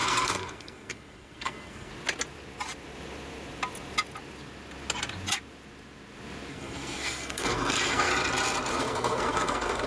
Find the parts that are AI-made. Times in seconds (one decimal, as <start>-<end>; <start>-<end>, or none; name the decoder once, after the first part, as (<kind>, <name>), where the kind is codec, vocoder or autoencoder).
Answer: 0.0-1.9 (codec, SNAC); 6.5-8.1; 8.7-9.9